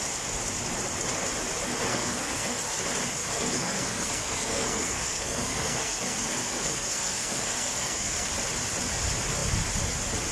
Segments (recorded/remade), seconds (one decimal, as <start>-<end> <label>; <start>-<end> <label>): 0.0-1.9 recorded; 1.9-2.8 remade; 2.8-3.2 recorded; 3.2-8.3 remade; 8.3-10.3 recorded